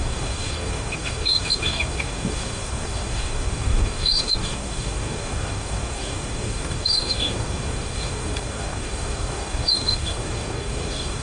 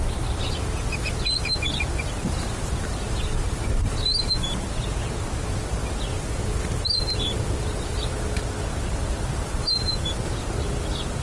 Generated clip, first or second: first